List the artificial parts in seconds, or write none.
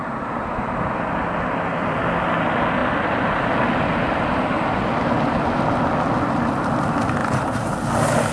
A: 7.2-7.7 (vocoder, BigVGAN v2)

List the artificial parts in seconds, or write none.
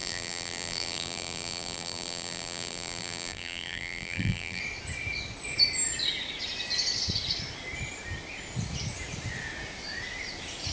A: 0.0-4.6 (vocoder, BigVGAN v2)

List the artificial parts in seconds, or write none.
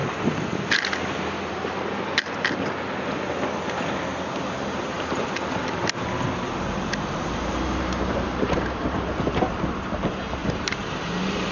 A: 4.1-5.7 (vocoder, BigVGAN v2); 6.7-9.0; 10.4-11.1